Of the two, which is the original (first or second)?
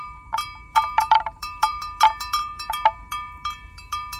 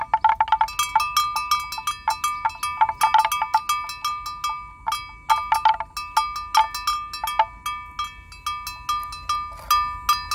second